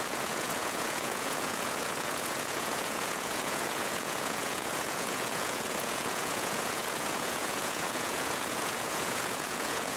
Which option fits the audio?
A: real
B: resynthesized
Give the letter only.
B